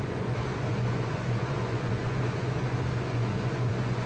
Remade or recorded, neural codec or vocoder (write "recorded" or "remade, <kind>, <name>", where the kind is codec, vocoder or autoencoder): remade, vocoder, Vocos